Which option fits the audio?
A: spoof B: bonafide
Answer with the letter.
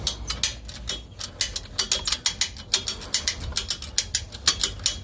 B